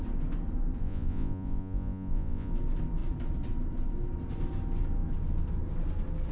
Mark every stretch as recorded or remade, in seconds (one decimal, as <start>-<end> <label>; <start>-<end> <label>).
0.0-0.8 recorded; 0.8-2.5 remade; 2.5-6.3 recorded